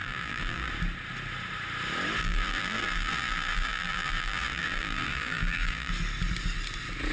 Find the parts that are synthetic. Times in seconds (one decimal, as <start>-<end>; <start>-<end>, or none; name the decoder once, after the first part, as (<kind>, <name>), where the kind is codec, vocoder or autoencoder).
0.0-0.7 (vocoder, BigVGAN v2); 2.2-5.9